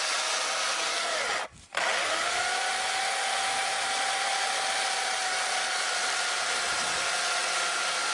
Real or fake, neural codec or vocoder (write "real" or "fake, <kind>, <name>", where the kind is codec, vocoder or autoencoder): real